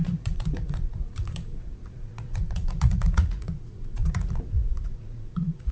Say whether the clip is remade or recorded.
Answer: remade